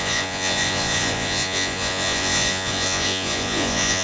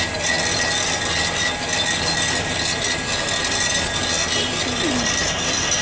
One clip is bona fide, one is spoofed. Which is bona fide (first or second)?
second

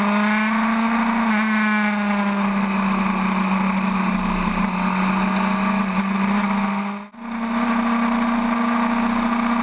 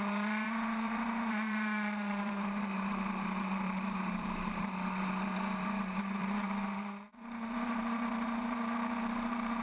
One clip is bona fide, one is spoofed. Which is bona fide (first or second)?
first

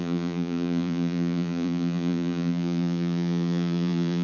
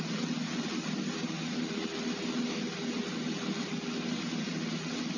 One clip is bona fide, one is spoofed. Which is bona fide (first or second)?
second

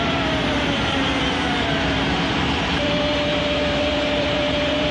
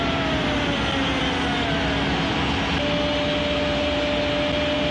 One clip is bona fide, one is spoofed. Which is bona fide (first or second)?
second